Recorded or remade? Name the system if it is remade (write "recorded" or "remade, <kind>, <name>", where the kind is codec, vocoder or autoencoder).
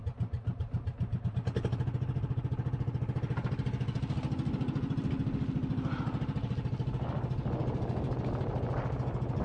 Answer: recorded